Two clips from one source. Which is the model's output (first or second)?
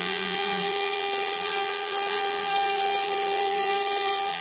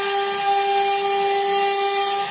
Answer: first